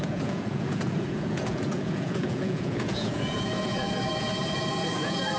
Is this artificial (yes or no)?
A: yes